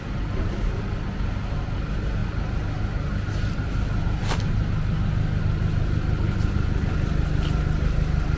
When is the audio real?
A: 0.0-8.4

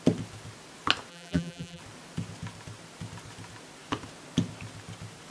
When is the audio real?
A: 0.0-1.1; 1.8-5.3

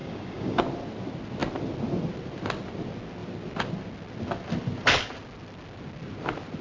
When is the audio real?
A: 0.6-6.6

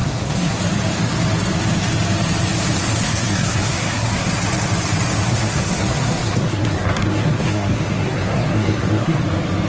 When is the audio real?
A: 0.6-2.9; 4.3-5.3; 9.2-9.7

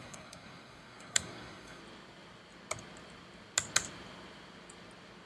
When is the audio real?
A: 1.8-5.3

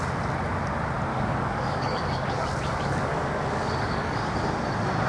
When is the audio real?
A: 0.0-1.1; 4.2-5.1

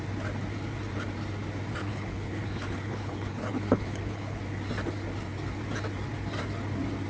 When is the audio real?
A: 0.0-1.8; 4.4-7.1